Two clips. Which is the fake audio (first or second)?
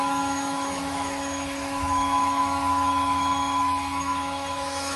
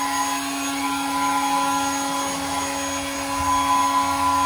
first